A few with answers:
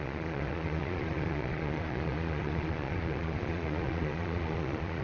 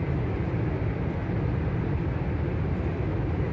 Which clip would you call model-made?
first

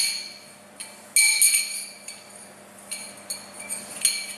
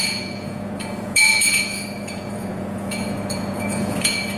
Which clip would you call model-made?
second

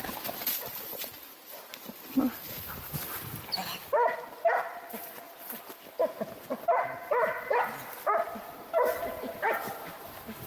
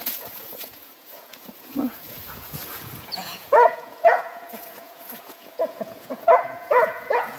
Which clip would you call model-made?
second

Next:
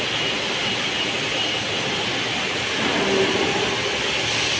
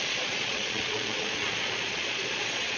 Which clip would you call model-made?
second